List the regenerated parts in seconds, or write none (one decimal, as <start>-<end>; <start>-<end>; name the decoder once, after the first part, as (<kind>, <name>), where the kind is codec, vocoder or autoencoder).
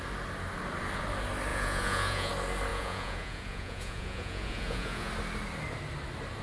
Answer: 1.5-2.3 (vocoder, Vocos); 2.7-5.1